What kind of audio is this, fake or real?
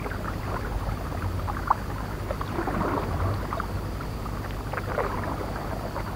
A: real